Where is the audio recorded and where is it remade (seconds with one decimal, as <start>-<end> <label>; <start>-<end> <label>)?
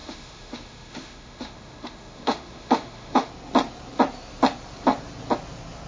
0.0-3.3 remade; 3.3-5.9 recorded